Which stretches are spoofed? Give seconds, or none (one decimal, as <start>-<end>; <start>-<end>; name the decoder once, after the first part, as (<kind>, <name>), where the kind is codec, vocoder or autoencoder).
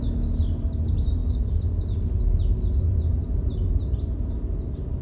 none